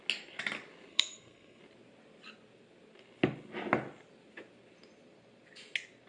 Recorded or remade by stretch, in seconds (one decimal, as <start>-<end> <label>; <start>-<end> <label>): 0.0-0.9 recorded; 0.9-1.6 remade; 1.6-6.1 recorded